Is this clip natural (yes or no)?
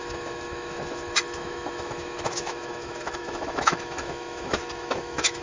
no